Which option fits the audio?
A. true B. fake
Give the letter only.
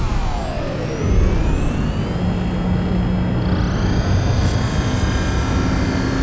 A